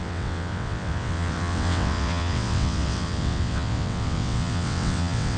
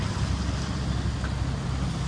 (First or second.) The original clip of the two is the second